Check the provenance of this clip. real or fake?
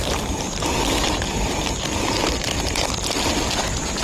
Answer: fake